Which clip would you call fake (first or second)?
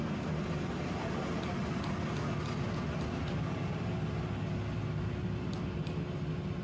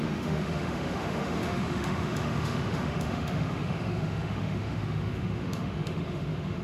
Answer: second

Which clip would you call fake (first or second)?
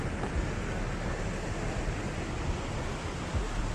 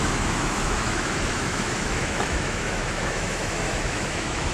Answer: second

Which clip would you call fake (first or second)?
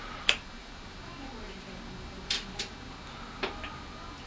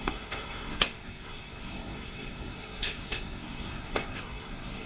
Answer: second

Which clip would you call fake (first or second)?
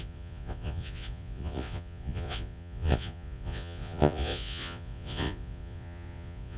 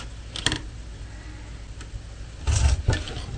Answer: first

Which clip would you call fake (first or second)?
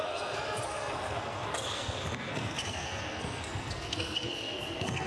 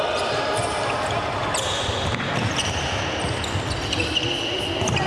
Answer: first